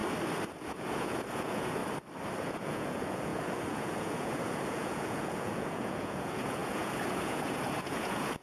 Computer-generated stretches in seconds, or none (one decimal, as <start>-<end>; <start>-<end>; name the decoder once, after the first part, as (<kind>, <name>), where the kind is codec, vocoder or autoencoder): 0.5-1.8 (vocoder, Vocos); 2.4-8.4